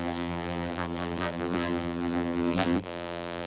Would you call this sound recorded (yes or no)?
no